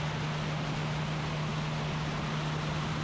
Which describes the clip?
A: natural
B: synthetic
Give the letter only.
A